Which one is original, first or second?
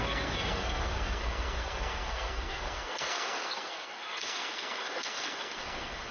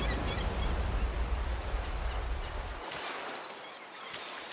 second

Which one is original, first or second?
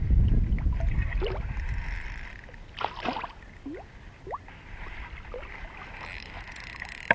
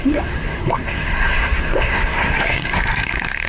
first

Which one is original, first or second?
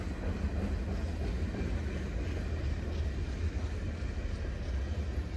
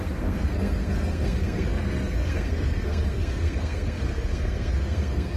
first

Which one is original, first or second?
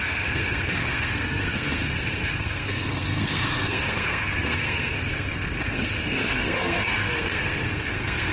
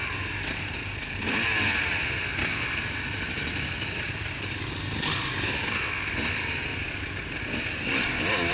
second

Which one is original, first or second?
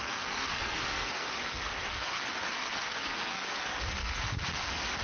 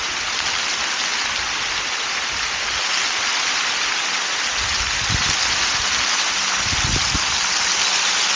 second